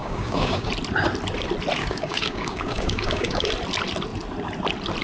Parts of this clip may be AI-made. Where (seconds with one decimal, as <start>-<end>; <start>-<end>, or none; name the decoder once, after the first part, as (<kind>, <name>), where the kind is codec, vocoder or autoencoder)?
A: 0.0-0.7 (codec, DAC); 1.8-3.5